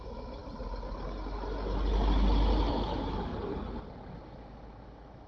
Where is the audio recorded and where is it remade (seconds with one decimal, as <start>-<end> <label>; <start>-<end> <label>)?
0.0-0.4 remade; 0.4-2.7 recorded; 2.7-3.3 remade; 3.3-4.1 recorded; 4.1-5.3 remade